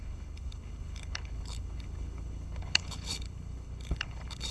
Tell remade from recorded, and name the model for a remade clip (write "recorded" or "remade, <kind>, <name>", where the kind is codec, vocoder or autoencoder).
remade, codec, HILCodec